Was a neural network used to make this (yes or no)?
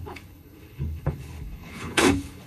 yes